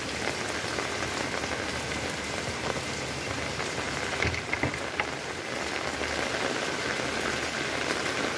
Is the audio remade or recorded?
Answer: recorded